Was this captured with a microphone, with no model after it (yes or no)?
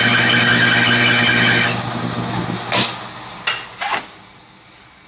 yes